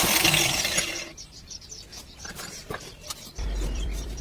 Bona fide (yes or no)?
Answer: no